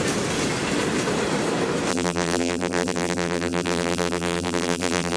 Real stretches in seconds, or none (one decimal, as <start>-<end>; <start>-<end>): 0.0-1.9

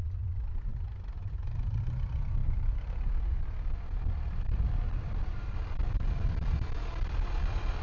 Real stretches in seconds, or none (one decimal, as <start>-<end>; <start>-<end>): 0.0-0.7; 1.8-2.4; 5.4-7.8